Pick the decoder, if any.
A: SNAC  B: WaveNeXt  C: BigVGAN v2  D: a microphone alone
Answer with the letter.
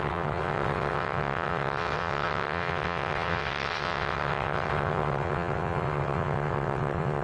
B